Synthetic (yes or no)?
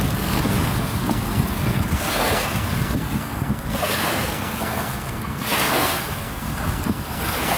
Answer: yes